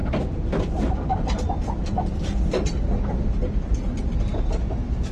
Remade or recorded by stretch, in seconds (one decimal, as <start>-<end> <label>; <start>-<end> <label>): 0.0-0.9 recorded; 0.9-5.1 remade

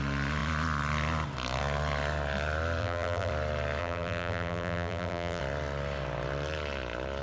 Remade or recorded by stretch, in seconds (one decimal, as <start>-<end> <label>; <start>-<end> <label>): 0.0-2.8 recorded; 2.8-3.3 remade; 3.3-3.8 recorded; 3.8-5.4 remade; 5.4-7.2 recorded

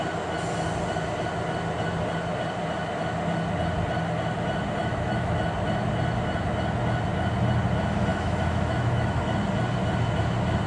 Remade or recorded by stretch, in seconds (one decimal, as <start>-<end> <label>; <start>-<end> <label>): 0.0-4.8 recorded; 4.8-5.4 remade; 5.4-8.1 recorded; 8.1-9.2 remade; 9.2-10.7 recorded

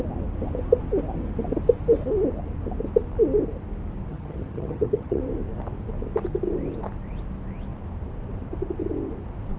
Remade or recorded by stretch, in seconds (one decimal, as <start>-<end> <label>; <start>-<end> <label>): 0.0-4.1 recorded; 4.1-5.2 remade; 5.2-9.6 recorded

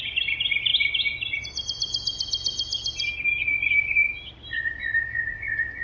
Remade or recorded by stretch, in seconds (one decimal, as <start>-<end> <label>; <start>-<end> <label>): 0.0-5.8 recorded

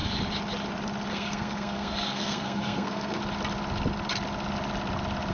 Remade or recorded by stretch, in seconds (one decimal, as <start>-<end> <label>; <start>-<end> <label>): 0.0-1.1 recorded; 1.1-3.2 remade; 3.2-5.3 recorded